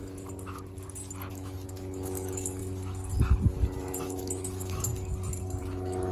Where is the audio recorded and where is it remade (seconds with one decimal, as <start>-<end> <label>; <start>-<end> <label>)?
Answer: 0.0-1.3 recorded; 1.3-2.6 remade; 2.6-4.0 recorded; 4.0-4.9 remade; 4.9-5.6 recorded; 5.6-6.1 remade